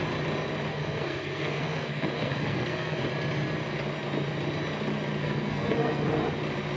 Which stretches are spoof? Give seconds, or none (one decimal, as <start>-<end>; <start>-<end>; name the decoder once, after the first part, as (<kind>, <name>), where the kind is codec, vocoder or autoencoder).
0.7-3.1 (codec, SNAC); 5.2-6.1